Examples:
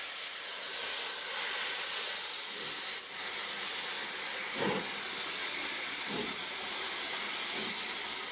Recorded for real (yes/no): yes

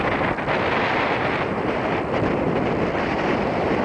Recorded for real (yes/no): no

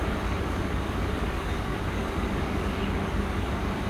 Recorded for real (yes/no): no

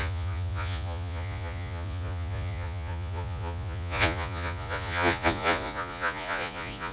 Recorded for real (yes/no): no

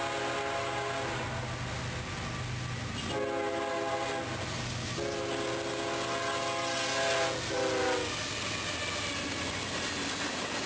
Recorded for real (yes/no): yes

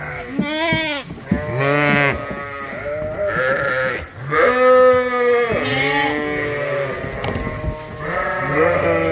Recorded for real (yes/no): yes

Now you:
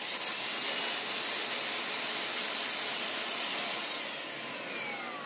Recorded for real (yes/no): yes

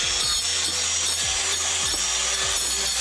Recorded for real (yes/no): yes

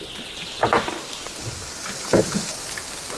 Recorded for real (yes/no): yes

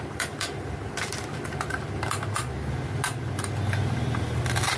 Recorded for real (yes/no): yes